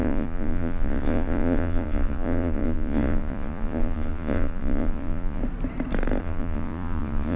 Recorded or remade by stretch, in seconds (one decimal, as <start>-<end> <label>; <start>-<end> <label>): 0.0-5.4 remade; 5.4-6.2 recorded; 6.2-7.4 remade